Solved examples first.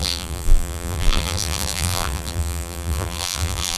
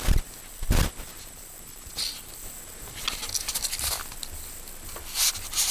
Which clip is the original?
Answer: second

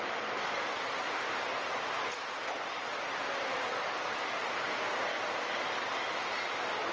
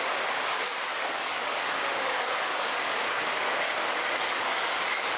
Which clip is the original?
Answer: first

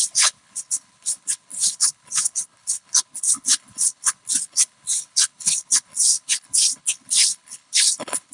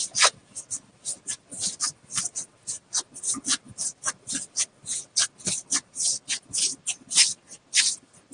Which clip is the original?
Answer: second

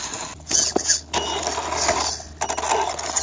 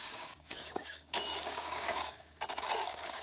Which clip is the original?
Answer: first